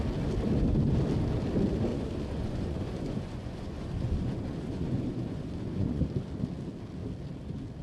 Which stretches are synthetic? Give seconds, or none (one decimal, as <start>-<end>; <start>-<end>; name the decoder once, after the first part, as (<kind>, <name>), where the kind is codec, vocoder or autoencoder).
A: 1.9-6.0 (vocoder, Vocos)